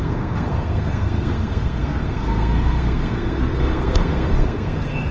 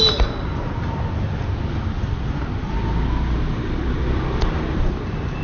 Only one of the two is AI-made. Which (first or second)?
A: first